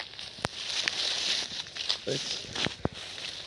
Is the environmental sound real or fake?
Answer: real